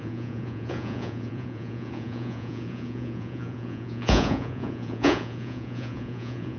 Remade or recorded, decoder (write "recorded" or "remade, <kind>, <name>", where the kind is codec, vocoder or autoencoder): remade, vocoder, Vocos